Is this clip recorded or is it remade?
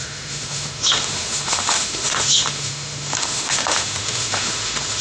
remade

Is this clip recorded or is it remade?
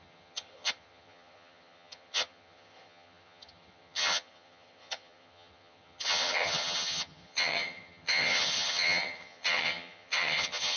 remade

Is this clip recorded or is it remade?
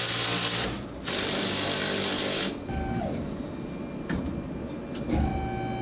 recorded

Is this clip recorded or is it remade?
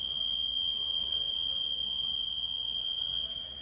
remade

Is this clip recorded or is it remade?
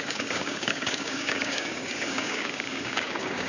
remade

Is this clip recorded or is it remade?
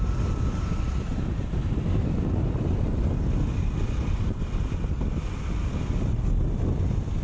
recorded